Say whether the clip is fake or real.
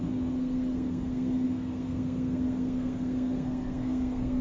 fake